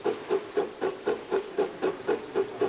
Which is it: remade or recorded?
recorded